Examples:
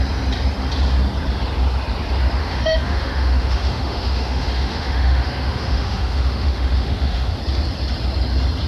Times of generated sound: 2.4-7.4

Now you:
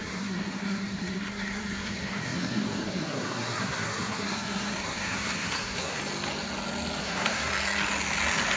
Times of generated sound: 0.0-6.0; 7.0-7.5

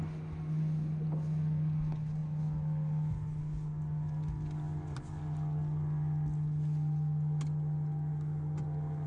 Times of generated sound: none

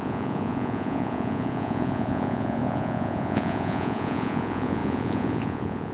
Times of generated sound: 0.0-5.9

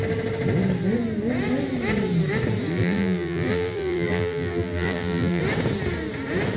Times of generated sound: 2.7-5.4